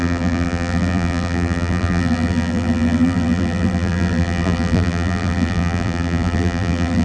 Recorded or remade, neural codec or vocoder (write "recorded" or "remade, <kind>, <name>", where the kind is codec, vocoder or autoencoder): remade, vocoder, BigVGAN v2